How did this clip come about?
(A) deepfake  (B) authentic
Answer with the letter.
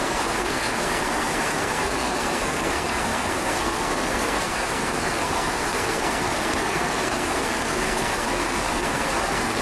A